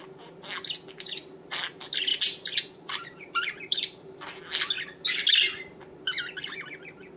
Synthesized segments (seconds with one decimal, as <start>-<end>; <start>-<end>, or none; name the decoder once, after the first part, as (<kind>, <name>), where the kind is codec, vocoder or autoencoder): 2.1-4.4 (vocoder, BigVGAN v2)